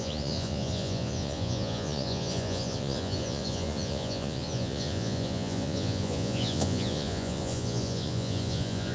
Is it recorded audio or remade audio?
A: remade